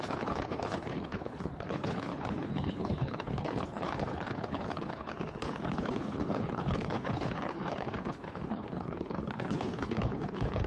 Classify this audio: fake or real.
fake